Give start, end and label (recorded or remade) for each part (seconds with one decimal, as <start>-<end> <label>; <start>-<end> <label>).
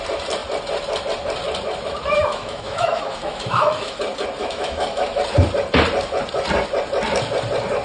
0.0-2.2 recorded; 2.2-4.0 remade; 4.0-4.4 recorded; 4.4-5.2 remade; 5.2-7.8 recorded